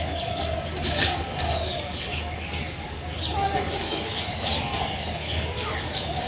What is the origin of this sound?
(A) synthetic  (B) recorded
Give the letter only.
A